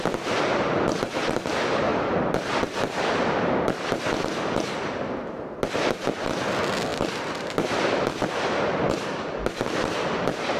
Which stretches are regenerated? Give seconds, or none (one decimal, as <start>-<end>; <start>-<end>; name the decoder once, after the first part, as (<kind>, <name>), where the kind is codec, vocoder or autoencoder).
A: none